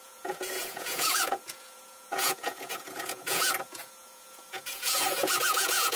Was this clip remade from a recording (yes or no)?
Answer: yes